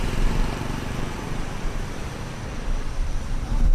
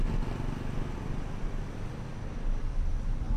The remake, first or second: first